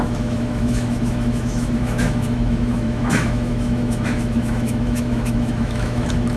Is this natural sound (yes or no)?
no